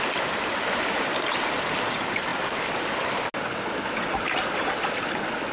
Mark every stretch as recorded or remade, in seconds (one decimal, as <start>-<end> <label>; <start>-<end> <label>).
0.0-5.5 recorded